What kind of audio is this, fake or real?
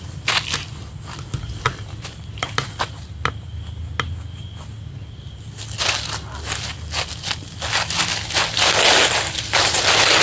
real